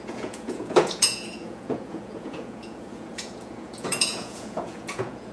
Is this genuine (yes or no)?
no